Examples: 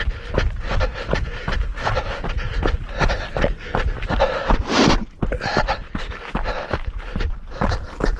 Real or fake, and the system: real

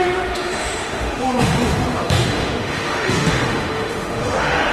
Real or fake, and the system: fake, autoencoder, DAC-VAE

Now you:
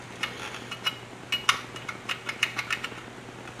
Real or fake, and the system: real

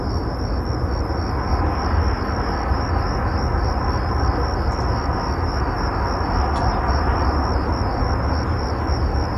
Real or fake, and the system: real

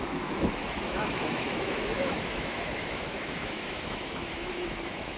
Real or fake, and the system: fake, autoencoder, DAC-VAE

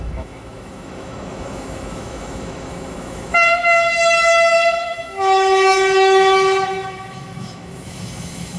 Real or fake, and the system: fake, autoencoder, DAC-VAE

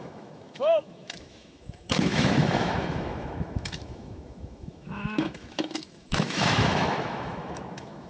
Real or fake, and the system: fake, autoencoder, DAC-VAE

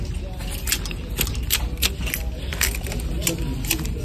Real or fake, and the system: real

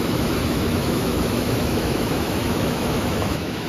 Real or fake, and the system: fake, autoencoder, DAC-VAE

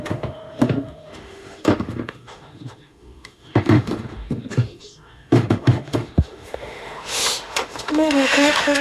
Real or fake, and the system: fake, autoencoder, DAC-VAE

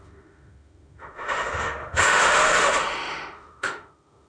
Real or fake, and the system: fake, autoencoder, DAC-VAE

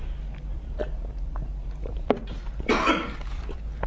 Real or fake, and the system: real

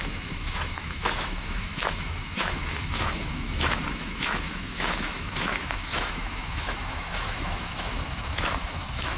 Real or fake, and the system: fake, autoencoder, DAC-VAE